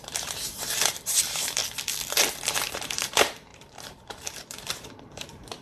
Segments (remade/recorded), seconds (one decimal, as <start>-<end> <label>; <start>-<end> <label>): 0.0-1.6 remade; 1.6-2.4 recorded; 2.4-5.6 remade